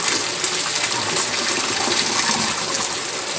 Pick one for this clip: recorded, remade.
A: recorded